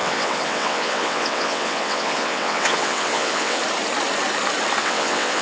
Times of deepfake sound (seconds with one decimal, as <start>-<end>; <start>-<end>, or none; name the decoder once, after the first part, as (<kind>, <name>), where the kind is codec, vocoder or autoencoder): 0.0-3.6 (vocoder, WaveNeXt); 4.8-5.4